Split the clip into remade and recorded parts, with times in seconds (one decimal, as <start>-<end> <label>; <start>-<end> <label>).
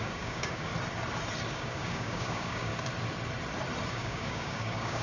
0.0-0.7 remade; 0.7-1.5 recorded; 1.5-2.7 remade; 2.7-3.9 recorded; 3.9-5.0 remade